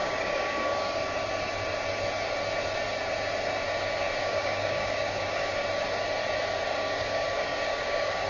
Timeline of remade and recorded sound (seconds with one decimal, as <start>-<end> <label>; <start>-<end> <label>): 0.0-1.0 remade; 1.0-4.2 recorded; 4.2-5.5 remade; 5.5-6.7 recorded; 6.7-8.3 remade